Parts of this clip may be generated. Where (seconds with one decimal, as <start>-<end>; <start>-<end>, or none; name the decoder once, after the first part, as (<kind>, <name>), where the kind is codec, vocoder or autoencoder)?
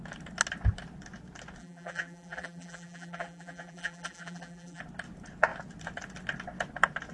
1.6-4.8 (vocoder, BigVGAN v2)